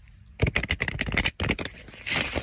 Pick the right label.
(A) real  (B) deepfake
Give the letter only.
A